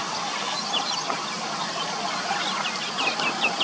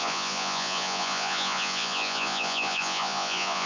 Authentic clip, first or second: first